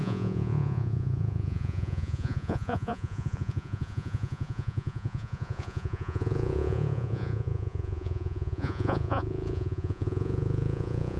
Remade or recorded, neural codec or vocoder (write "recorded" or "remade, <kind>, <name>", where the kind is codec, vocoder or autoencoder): remade, vocoder, Vocos